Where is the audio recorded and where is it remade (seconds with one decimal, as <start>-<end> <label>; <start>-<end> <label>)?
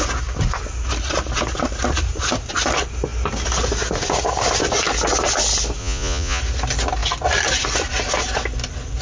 0.0-5.8 recorded; 5.8-6.4 remade; 6.4-9.0 recorded